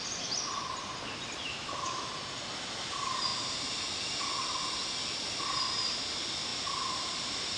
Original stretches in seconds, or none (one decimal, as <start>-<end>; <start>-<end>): 0.0-1.4; 2.1-7.6